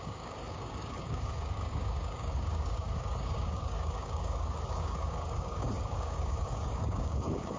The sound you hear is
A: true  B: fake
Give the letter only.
B